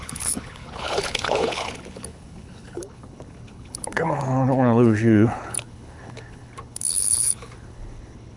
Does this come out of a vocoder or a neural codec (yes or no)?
yes